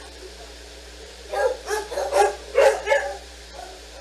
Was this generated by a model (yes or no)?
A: yes